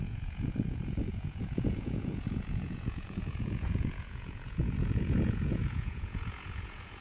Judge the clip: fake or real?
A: fake